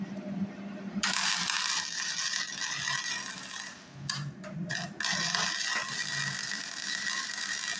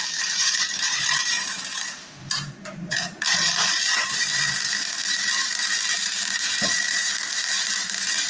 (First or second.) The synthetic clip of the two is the second